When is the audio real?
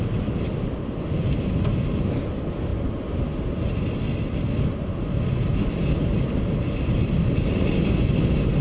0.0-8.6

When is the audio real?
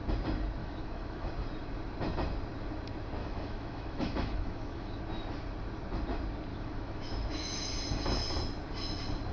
0.0-0.6; 1.3-3.2; 5.0-6.5; 7.7-9.3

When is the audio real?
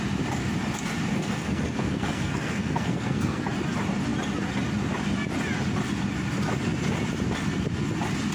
0.0-1.1; 3.4-8.3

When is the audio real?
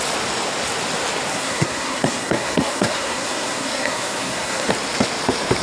0.0-1.3; 4.7-5.6